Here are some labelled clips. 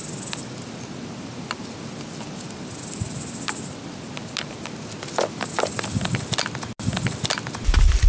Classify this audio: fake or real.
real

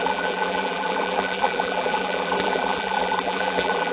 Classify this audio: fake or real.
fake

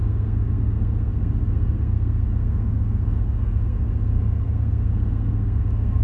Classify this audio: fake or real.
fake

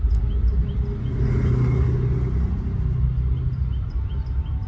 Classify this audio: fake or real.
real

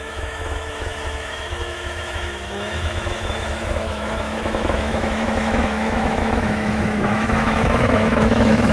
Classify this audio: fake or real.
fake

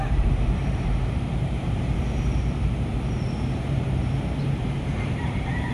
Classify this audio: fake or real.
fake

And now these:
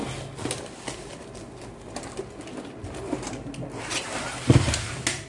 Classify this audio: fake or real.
real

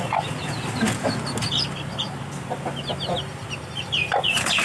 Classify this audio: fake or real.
real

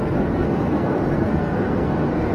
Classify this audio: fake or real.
fake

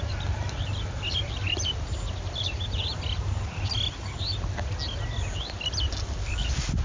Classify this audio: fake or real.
real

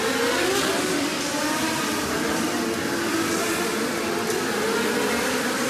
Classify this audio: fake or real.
real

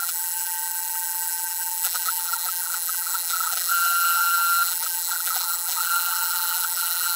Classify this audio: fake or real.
fake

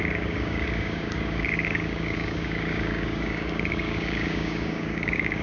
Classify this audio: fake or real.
fake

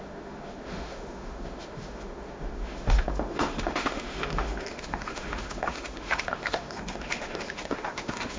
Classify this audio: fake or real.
fake